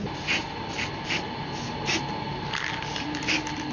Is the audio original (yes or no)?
yes